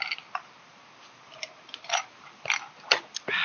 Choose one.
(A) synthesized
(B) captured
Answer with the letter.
B